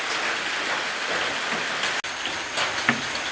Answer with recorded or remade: recorded